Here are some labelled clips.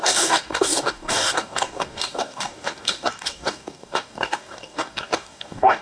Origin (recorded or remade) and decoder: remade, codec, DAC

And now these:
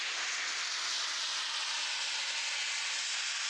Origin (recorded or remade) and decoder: recorded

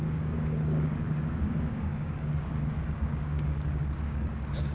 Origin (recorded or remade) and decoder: remade, codec, DAC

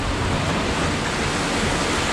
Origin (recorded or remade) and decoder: recorded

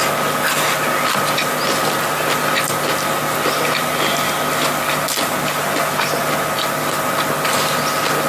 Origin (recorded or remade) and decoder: recorded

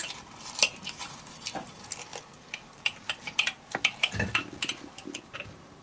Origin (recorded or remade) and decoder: recorded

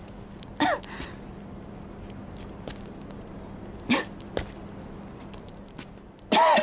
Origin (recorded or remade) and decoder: recorded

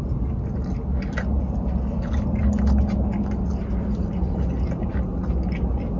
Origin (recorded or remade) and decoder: recorded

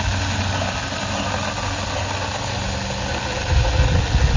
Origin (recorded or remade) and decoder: recorded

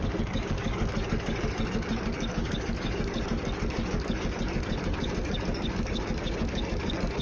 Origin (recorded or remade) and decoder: remade, codec, DAC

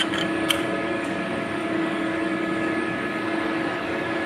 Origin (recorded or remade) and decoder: remade, codec, DAC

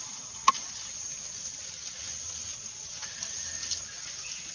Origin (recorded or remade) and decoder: recorded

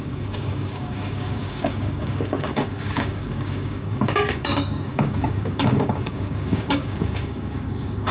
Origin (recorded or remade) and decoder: remade, codec, DAC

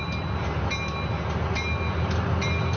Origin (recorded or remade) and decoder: recorded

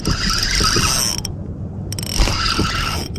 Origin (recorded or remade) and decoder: recorded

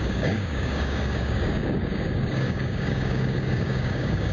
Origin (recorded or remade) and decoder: remade, codec, DAC